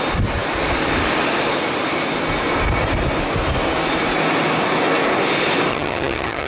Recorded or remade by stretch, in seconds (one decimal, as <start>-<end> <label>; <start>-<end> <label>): 0.0-5.7 recorded; 5.7-6.5 remade